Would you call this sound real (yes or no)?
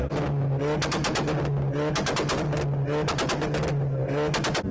yes